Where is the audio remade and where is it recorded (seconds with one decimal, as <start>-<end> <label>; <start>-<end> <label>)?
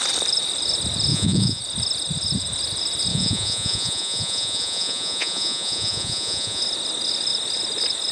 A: 0.0-1.1 recorded; 1.1-1.6 remade; 1.6-3.1 recorded; 3.1-6.6 remade; 6.6-8.1 recorded